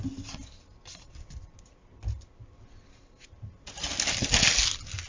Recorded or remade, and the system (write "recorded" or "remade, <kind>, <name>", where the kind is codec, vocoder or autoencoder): recorded